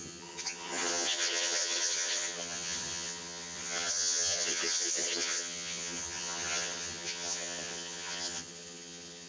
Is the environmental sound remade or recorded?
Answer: remade